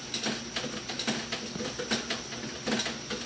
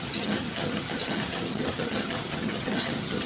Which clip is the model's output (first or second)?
second